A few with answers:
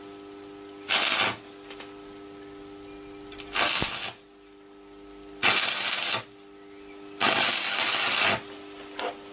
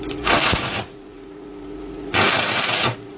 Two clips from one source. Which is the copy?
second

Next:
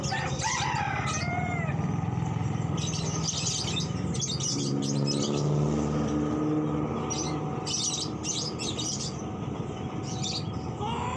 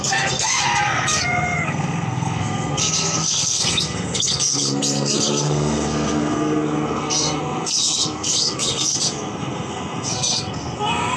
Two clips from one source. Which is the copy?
second